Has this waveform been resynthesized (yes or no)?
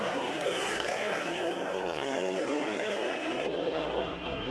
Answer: yes